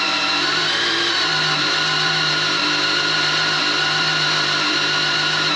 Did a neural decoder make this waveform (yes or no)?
yes